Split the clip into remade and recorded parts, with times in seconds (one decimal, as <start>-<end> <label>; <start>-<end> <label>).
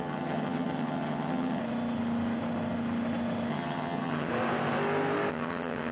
0.0-1.6 remade; 1.6-3.5 recorded; 3.5-4.3 remade; 4.3-5.3 recorded; 5.3-5.9 remade